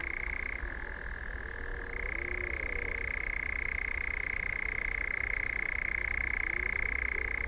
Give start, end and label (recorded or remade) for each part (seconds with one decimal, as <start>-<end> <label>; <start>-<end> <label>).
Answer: 0.0-7.5 recorded